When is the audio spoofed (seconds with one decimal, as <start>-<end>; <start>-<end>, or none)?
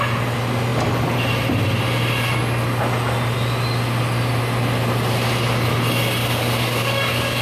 6.2-7.4